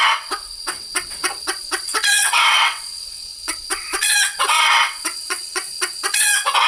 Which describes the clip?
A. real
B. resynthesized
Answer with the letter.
B